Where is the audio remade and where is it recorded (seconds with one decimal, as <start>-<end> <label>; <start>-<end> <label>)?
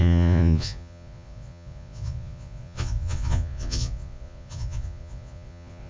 0.0-5.9 remade